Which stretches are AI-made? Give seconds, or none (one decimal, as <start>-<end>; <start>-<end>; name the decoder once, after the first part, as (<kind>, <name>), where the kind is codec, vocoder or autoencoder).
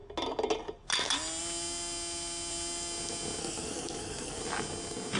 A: 3.4-4.4 (codec, SNAC)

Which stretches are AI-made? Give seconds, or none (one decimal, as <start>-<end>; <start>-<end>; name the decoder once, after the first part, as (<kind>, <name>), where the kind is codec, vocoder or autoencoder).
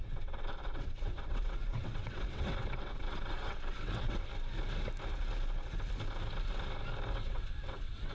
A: 0.0-4.3 (vocoder, WaveNeXt); 7.1-8.1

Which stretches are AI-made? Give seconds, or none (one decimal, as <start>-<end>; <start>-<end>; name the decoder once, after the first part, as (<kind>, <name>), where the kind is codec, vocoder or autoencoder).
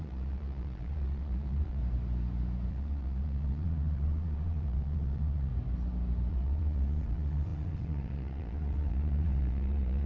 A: 0.0-1.8 (vocoder, Vocos); 2.7-5.5; 6.3-10.1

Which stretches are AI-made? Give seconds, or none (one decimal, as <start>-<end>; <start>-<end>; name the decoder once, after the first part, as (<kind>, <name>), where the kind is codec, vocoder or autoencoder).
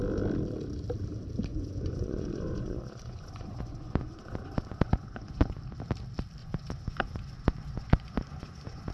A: 1.5-5.6 (vocoder, Vocos); 6.4-8.9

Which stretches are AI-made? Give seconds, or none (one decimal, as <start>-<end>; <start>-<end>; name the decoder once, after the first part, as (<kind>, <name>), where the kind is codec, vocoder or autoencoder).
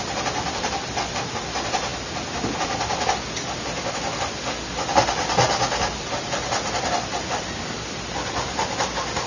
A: none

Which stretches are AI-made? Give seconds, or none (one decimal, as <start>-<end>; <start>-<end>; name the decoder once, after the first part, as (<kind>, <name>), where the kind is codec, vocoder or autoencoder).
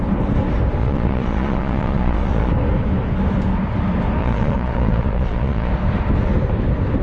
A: 0.8-2.5 (vocoder, Vocos); 4.2-5.7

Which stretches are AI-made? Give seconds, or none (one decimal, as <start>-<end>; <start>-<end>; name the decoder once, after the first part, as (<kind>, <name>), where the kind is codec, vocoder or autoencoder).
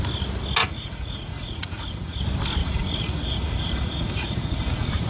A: 0.6-2.2 (vocoder, Vocos); 2.6-5.1